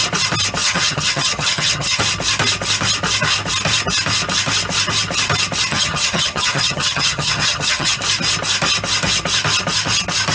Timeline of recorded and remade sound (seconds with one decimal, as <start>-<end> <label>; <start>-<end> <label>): 0.0-0.6 recorded; 0.6-2.0 remade; 2.0-5.7 recorded; 5.7-8.0 remade; 8.0-10.3 recorded